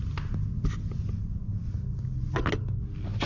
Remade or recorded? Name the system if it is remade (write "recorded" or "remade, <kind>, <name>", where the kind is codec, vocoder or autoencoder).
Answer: recorded